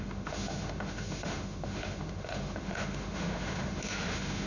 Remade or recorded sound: remade